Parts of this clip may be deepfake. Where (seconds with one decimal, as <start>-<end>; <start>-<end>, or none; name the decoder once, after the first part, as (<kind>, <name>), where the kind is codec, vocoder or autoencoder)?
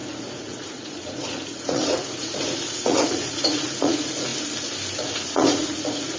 0.0-4.3 (vocoder, Vocos); 5.1-6.2